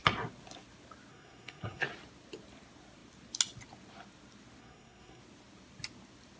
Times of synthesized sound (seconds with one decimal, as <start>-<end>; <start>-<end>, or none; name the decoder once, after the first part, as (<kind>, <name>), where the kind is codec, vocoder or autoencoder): 1.1-1.8 (codec, SNAC); 4.6-5.2